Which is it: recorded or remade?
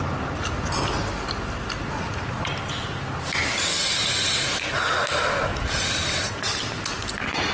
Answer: recorded